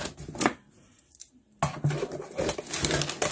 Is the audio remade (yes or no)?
no